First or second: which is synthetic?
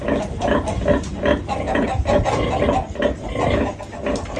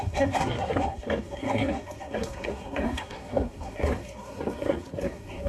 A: second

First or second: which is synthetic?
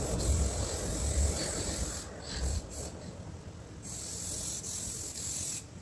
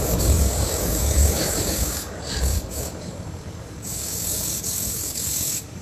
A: second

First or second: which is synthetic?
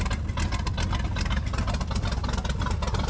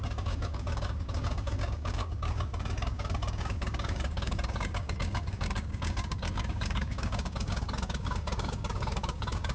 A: second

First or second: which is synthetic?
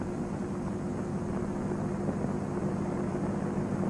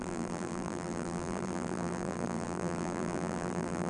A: second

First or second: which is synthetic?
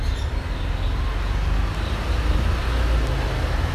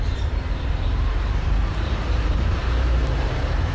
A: second